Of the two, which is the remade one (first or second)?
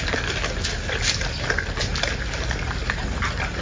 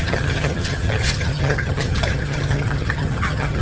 second